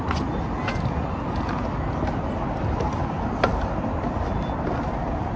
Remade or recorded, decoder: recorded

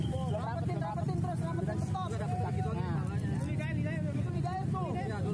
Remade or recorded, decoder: recorded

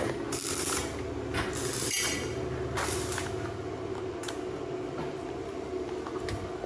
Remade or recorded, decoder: recorded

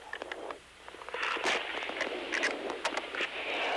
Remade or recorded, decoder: recorded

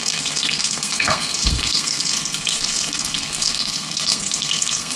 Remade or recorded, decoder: remade, codec, SNAC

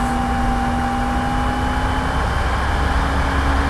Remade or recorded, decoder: recorded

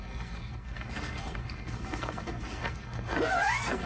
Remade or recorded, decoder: remade, codec, SNAC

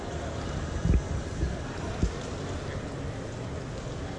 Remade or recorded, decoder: recorded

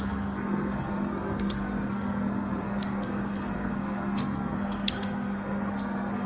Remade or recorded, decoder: remade, codec, SNAC